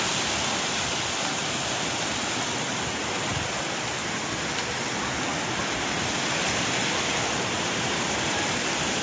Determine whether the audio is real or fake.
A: real